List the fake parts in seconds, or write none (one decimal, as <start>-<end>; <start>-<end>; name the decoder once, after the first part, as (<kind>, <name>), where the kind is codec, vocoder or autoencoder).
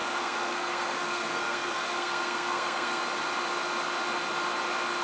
0.0-3.0 (codec, SNAC)